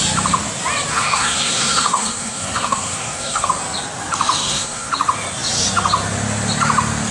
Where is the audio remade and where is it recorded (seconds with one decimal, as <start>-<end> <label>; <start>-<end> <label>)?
0.0-0.9 recorded; 0.9-3.5 remade; 3.5-4.4 recorded; 4.4-4.9 remade; 4.9-7.1 recorded